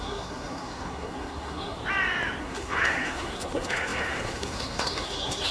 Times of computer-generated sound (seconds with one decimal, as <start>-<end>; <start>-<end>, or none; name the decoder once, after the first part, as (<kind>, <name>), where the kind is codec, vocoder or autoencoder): 0.0-1.8 (codec, SNAC); 2.4-5.5